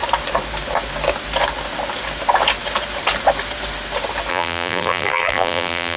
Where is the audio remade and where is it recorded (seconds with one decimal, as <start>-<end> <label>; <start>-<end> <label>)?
0.0-4.3 recorded; 4.3-6.0 remade